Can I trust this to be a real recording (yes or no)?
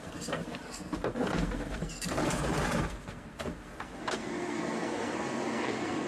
no